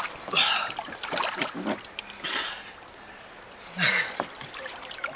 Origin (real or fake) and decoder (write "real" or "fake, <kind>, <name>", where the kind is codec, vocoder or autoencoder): real